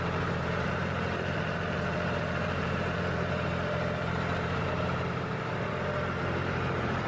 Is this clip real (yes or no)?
no